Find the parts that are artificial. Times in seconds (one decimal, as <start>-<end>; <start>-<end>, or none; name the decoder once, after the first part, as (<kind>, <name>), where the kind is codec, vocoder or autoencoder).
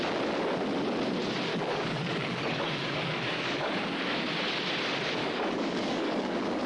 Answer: 1.5-4.0 (codec, DAC); 5.2-6.7